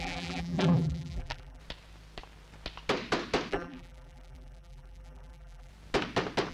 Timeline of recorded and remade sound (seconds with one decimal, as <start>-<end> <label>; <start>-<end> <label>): 0.0-1.6 remade; 1.6-3.5 recorded; 3.5-5.7 remade; 5.7-6.5 recorded